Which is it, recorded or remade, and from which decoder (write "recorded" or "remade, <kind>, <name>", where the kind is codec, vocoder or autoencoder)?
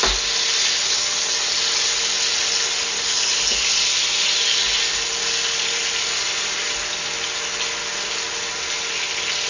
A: recorded